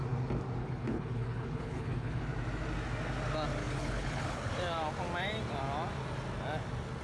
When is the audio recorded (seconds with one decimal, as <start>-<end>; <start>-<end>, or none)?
0.0-0.6; 2.2-3.6; 4.5-7.0